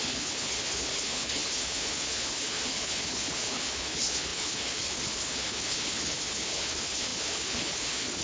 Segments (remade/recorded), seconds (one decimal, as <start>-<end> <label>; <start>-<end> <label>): 0.0-8.2 remade